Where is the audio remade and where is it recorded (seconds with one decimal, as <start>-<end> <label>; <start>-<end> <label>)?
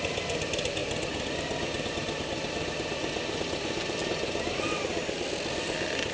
0.0-6.1 recorded